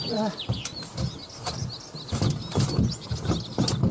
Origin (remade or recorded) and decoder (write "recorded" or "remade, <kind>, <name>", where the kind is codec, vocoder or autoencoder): recorded